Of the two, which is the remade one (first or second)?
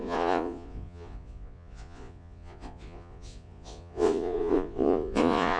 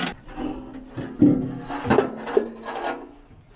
first